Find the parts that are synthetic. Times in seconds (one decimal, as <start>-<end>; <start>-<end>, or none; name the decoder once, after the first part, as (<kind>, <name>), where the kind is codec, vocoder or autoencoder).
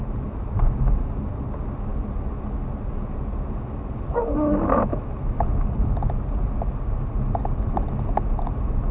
4.9-5.9 (vocoder, BigVGAN v2)